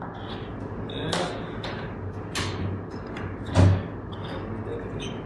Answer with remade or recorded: recorded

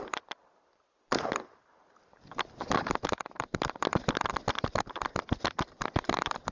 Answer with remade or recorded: recorded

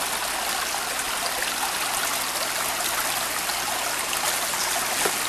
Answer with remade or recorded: recorded